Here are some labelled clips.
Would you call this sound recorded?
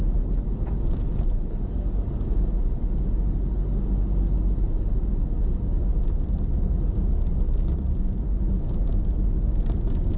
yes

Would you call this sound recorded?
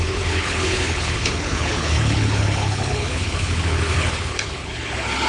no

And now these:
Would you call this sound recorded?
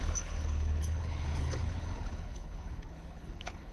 no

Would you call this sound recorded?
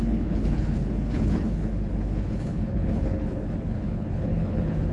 no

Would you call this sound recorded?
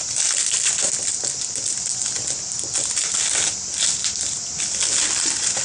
yes